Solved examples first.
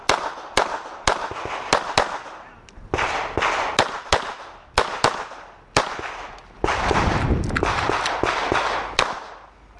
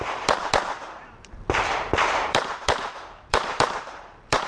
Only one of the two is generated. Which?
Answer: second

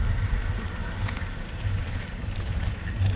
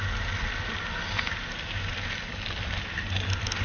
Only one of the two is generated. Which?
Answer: first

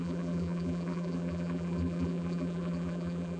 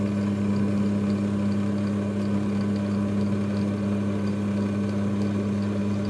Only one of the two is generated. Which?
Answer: first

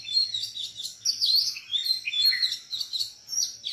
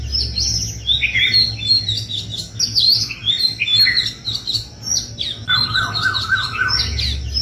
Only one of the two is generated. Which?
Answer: first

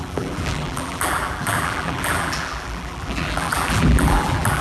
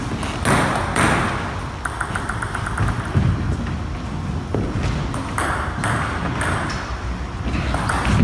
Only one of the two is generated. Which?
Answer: first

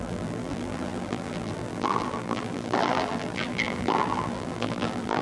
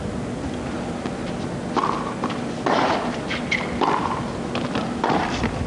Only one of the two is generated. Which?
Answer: first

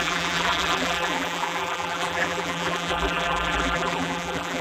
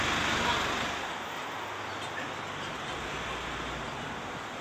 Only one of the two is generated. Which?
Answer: first